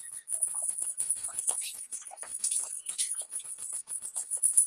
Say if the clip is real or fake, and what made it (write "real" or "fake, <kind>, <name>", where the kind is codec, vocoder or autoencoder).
fake, codec, SNAC